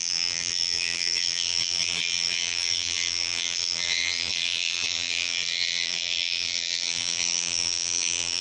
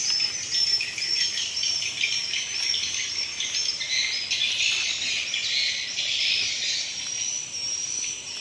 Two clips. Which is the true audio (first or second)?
second